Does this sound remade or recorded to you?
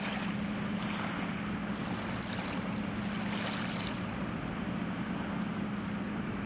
recorded